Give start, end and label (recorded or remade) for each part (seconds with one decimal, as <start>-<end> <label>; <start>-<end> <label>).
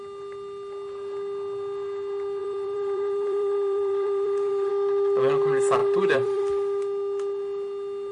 0.0-2.4 recorded; 2.4-4.7 remade; 4.7-5.8 recorded; 5.8-6.4 remade; 6.4-8.1 recorded